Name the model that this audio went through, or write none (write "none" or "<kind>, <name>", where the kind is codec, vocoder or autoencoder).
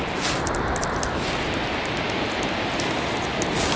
none